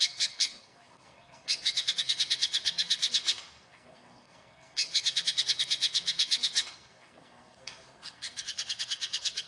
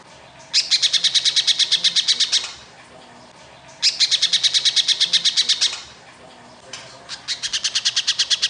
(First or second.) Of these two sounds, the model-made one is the first